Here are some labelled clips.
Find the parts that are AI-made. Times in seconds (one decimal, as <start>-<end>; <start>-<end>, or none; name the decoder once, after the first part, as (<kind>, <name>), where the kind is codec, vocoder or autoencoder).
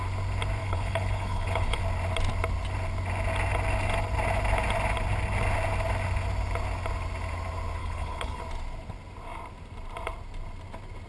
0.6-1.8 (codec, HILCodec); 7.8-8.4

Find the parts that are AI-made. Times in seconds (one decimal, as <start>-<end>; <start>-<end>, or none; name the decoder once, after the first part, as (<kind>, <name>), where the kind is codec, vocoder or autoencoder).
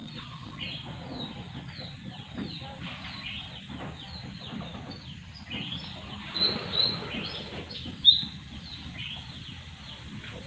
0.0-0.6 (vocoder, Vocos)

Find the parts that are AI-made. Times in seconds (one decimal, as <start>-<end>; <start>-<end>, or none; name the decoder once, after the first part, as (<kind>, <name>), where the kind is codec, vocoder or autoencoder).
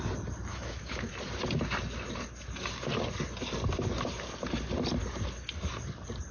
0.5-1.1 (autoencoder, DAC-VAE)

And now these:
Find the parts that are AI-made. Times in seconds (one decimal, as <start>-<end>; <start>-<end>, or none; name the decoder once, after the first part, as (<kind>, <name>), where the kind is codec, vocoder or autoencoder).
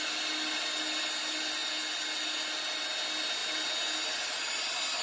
none